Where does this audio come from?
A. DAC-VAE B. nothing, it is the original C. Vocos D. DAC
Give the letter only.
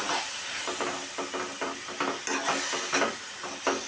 B